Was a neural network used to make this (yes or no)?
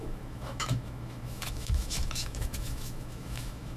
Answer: yes